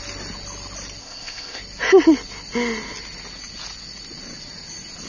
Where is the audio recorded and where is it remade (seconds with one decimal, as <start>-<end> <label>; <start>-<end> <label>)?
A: 0.0-1.0 recorded; 1.0-1.6 remade; 1.6-5.1 recorded